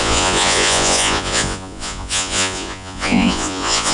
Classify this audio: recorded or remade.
remade